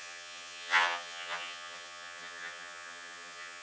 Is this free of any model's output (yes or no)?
no